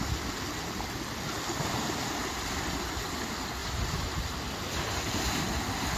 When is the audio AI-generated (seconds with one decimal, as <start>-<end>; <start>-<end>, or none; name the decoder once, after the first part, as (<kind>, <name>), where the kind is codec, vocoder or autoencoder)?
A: 3.6-5.4 (vocoder, BigVGAN v2)